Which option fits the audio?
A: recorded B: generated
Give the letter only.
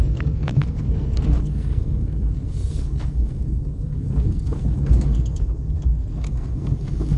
B